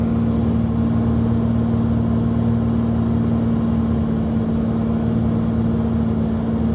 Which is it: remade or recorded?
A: recorded